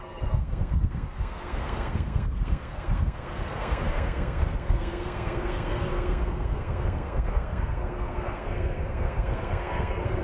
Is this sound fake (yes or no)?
yes